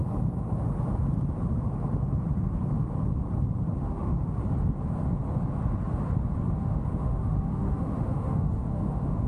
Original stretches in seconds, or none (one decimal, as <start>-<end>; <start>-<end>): 0.0-3.8; 4.4-6.6